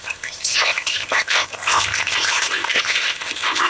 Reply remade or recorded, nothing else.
remade